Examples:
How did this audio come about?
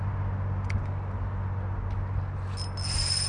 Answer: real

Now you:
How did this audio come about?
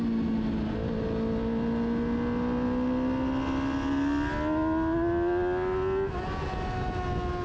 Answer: real